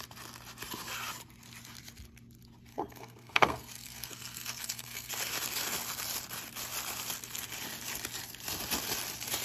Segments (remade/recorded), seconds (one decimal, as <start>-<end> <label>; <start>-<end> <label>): 0.0-2.7 recorded; 2.7-5.1 remade; 5.1-9.4 recorded